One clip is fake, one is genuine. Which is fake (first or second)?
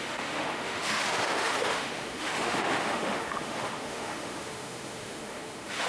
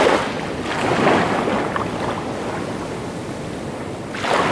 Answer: first